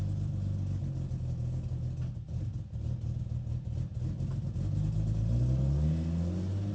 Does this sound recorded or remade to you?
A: recorded